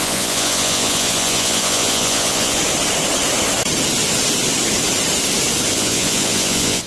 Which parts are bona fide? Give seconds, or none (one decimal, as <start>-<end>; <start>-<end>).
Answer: 2.6-5.7